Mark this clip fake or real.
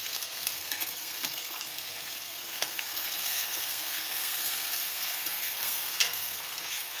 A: fake